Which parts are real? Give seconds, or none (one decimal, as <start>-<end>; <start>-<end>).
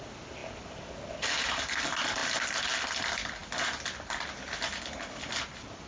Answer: 0.0-5.9